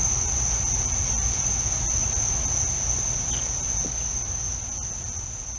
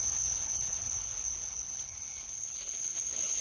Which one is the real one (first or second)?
first